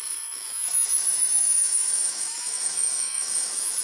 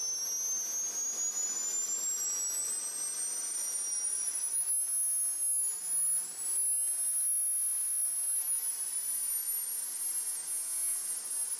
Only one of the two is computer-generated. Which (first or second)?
first